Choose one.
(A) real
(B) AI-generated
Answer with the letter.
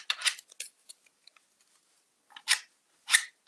A